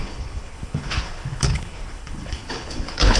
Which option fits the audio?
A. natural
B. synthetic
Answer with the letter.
B